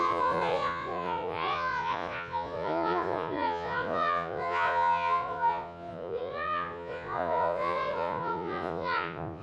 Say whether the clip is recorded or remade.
remade